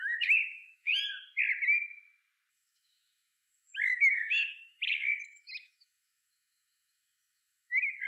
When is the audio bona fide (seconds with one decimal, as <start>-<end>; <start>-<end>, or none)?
0.9-2.5